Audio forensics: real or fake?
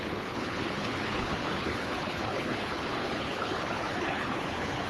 fake